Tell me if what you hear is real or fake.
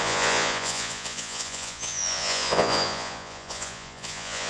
fake